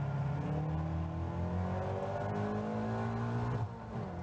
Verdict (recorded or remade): recorded